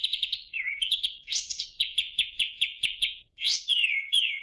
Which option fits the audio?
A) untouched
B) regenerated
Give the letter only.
B